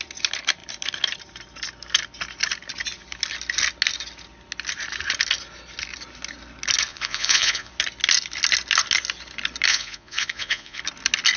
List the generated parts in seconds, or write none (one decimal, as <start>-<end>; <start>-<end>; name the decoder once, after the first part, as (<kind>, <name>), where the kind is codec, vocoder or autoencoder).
6.9-7.7 (vocoder, Vocos); 9.7-10.8

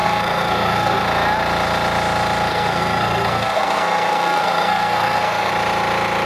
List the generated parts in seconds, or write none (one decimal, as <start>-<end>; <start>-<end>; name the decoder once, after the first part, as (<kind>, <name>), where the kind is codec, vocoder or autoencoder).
0.0-1.0 (codec, SNAC); 2.5-5.5